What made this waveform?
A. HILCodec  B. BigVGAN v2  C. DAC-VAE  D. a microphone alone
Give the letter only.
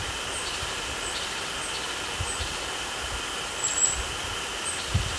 D